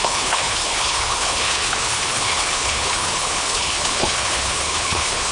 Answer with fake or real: fake